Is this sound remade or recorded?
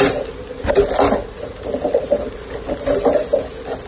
recorded